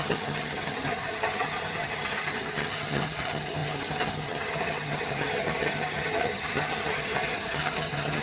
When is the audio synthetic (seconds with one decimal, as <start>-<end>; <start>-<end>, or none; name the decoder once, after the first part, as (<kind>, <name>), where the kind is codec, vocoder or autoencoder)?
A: 0.0-8.2 (vocoder, HiFi-GAN)